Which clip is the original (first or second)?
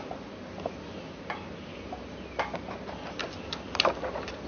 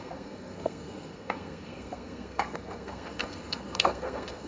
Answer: first